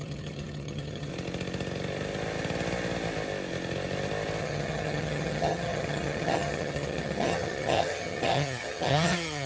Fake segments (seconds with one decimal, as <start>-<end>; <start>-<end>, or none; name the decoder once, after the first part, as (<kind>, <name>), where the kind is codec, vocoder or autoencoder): 0.0-1.1 (vocoder, HiFi-GAN); 4.4-9.5

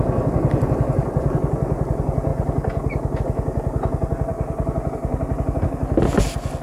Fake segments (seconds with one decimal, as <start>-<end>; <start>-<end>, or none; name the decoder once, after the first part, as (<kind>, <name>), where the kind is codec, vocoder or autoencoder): none

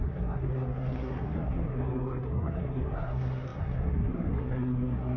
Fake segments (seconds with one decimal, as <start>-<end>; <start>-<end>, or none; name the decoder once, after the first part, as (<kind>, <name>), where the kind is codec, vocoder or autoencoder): 0.0-5.2 (codec, SNAC)